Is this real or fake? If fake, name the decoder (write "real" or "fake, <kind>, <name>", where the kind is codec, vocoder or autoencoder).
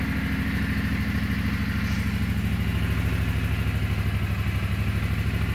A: real